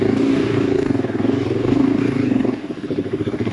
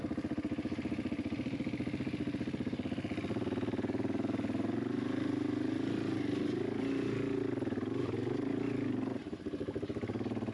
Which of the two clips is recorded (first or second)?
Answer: second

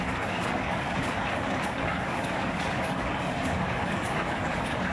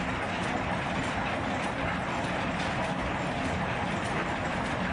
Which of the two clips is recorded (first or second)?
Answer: second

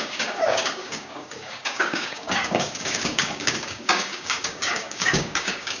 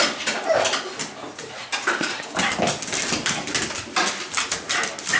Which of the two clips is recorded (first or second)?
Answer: second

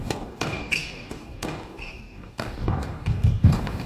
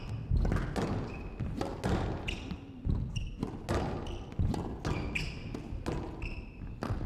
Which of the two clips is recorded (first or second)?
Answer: second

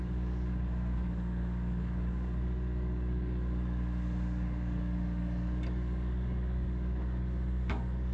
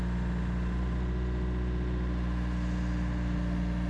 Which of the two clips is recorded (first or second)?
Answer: second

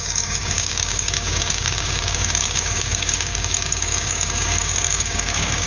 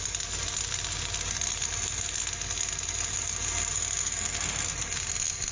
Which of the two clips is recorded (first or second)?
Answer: second